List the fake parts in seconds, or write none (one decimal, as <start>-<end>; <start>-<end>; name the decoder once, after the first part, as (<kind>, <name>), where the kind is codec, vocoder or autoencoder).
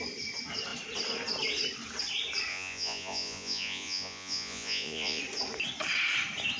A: 2.5-5.2 (vocoder, Vocos)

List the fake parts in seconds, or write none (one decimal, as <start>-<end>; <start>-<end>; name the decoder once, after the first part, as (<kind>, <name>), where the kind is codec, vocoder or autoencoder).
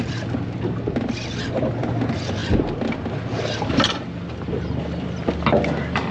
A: none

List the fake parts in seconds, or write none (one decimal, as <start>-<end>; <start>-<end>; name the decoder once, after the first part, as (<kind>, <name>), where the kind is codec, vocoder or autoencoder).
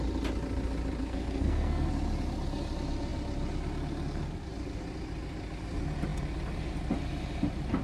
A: 1.0-1.9 (codec, SNAC)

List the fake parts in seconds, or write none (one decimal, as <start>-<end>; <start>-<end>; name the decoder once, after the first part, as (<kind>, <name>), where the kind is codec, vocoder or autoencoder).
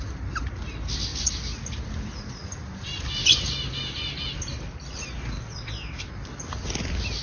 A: none